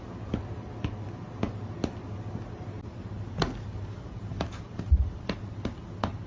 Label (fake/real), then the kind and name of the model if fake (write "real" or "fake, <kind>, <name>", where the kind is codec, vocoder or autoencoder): real